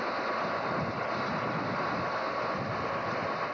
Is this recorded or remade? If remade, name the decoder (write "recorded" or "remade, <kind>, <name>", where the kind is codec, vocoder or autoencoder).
recorded